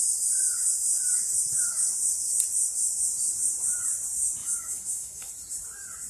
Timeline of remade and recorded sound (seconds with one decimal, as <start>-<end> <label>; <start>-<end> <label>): 0.0-4.4 recorded; 4.4-5.3 remade; 5.3-6.1 recorded